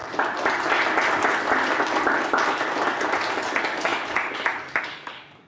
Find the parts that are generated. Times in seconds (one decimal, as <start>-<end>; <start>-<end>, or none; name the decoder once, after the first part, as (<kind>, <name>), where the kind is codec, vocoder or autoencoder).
3.3-5.5 (codec, DAC)